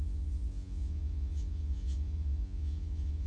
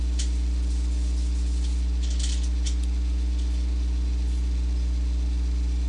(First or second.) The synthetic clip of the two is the first